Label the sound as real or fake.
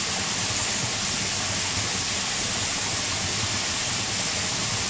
real